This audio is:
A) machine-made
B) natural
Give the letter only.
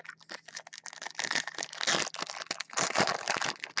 B